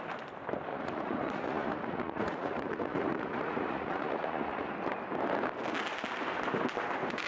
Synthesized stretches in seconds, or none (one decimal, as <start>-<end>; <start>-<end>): 0.7-4.7